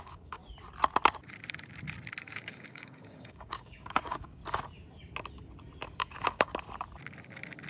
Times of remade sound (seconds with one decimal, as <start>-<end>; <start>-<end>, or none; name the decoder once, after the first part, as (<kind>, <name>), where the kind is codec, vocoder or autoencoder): 0.0-0.4 (codec, DAC); 2.2-4.4; 6.0-6.5